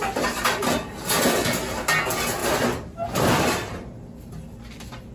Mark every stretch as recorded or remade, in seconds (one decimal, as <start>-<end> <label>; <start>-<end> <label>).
0.0-2.4 recorded; 2.4-5.1 remade